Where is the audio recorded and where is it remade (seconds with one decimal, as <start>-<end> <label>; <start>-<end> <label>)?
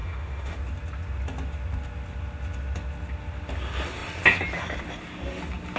0.0-0.6 remade; 0.6-5.8 recorded